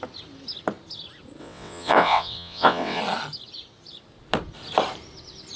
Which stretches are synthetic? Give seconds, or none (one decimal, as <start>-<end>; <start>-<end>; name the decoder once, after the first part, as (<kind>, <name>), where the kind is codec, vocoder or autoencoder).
1.4-3.0 (vocoder, WaveNeXt)

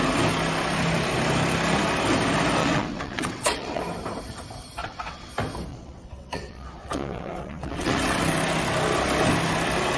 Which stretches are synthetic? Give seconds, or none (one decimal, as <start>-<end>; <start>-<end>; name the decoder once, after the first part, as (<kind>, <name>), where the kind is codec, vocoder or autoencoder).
2.6-3.8 (vocoder, WaveNeXt); 4.8-5.3; 5.7-8.2

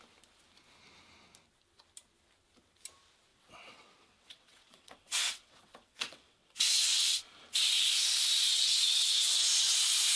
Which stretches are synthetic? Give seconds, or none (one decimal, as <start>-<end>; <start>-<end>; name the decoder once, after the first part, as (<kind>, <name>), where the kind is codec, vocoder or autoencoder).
3.3-7.2 (vocoder, WaveNeXt); 8.5-9.1

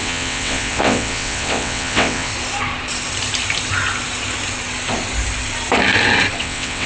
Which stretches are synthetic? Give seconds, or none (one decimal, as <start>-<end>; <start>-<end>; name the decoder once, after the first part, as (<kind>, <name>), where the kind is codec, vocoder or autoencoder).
0.0-2.3 (vocoder, WaveNeXt); 6.4-6.9

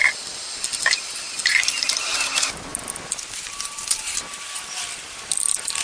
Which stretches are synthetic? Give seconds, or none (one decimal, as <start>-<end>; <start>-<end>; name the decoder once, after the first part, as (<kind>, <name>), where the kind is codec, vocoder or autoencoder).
none

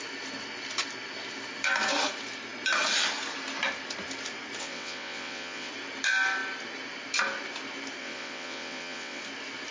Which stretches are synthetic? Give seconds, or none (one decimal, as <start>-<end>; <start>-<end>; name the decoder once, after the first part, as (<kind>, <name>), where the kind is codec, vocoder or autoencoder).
4.6-5.7 (vocoder, WaveNeXt); 8.0-9.2

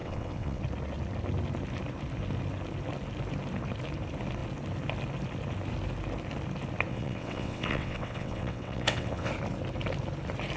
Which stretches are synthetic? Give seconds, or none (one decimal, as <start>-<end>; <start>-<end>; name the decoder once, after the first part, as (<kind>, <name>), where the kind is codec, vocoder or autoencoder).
0.0-0.6 (vocoder, WaveNeXt); 6.9-9.3